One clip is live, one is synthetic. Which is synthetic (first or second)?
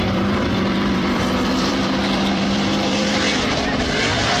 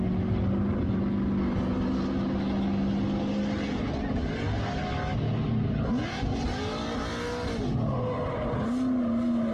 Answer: first